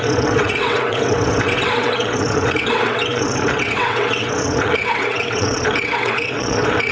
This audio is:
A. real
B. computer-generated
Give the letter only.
B